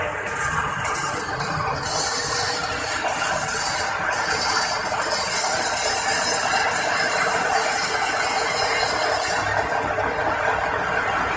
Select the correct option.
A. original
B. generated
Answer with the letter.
A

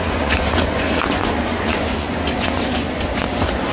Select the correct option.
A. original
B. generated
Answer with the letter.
B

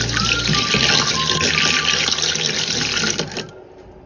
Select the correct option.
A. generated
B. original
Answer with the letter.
B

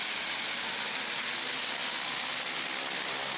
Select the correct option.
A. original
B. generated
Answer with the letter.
A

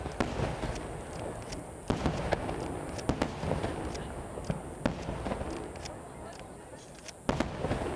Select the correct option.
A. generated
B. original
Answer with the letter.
B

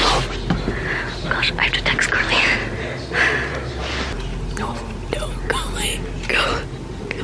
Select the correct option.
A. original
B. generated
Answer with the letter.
A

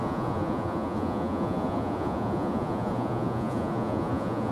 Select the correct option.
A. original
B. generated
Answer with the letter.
B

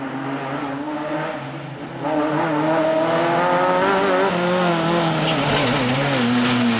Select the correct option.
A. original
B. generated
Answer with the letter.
A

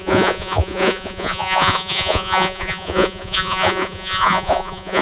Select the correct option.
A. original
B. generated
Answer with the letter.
B